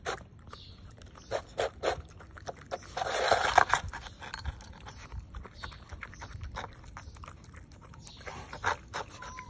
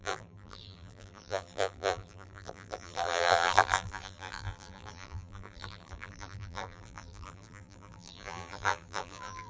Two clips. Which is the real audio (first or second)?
first